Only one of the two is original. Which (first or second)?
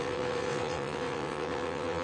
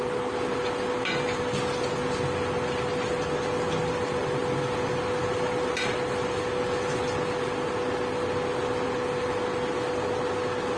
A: second